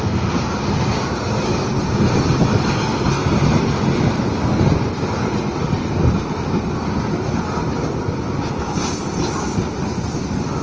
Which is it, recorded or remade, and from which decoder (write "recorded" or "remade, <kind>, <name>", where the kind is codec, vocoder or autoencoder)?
recorded